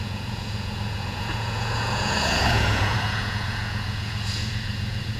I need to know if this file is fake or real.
fake